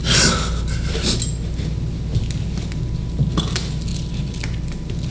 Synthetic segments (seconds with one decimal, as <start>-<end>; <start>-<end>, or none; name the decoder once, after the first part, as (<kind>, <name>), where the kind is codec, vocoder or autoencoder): none